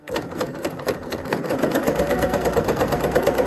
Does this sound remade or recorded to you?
remade